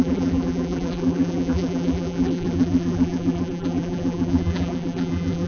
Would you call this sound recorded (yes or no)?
no